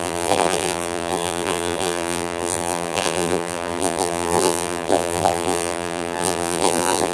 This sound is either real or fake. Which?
fake